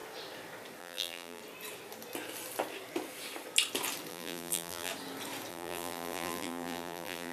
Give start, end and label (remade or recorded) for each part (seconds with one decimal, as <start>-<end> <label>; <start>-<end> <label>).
0.0-0.8 recorded; 0.8-1.4 remade; 1.4-4.1 recorded; 4.1-4.9 remade; 4.9-5.5 recorded; 5.5-7.3 remade